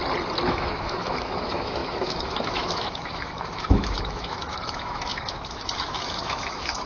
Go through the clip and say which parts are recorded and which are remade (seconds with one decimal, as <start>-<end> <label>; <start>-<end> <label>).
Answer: 0.0-0.5 recorded; 0.5-6.9 remade

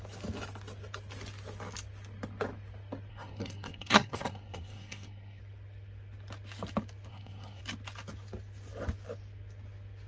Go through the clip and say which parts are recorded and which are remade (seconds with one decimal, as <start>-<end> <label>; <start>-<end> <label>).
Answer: 0.0-3.1 recorded; 3.1-5.4 remade; 5.4-7.1 recorded; 7.1-7.6 remade; 7.6-10.1 recorded

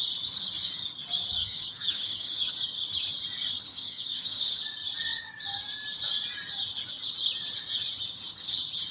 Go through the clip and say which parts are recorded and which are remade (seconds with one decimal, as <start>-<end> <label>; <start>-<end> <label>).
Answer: 0.0-1.4 recorded; 1.4-2.5 remade; 2.5-3.7 recorded; 3.7-4.6 remade; 4.6-8.9 recorded

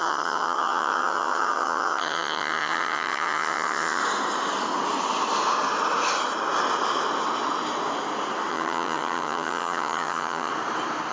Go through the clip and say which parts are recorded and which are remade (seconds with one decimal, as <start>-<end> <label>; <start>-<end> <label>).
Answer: 0.0-4.0 remade; 4.0-8.5 recorded; 8.5-10.5 remade; 10.5-11.1 recorded